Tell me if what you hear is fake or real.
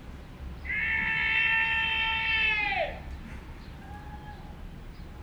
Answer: real